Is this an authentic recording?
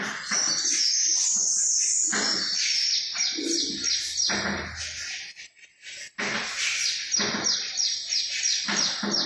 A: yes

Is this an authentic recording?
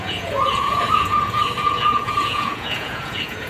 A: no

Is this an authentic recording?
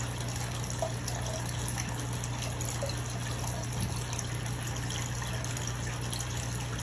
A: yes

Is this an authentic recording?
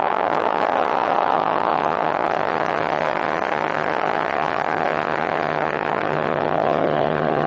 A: no